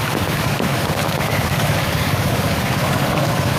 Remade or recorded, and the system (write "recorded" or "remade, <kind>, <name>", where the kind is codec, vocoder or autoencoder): remade, codec, DAC